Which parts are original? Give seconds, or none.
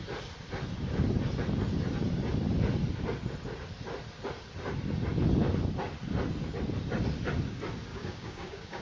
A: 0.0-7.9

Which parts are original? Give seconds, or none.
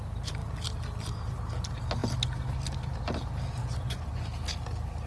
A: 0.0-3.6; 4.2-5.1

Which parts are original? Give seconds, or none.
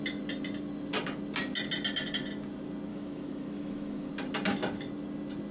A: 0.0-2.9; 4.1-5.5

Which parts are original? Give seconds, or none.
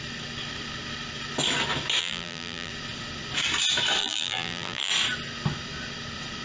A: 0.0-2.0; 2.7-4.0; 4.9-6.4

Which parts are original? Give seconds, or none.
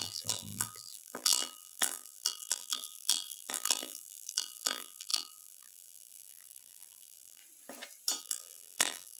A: 7.4-8.2